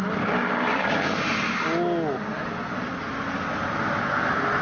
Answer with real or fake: real